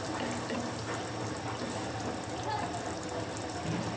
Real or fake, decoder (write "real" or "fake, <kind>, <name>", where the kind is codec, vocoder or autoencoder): real